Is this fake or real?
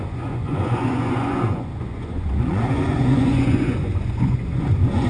fake